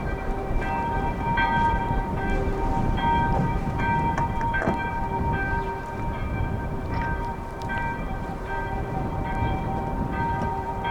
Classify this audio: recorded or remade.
remade